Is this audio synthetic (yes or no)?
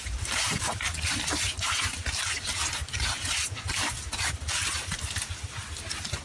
no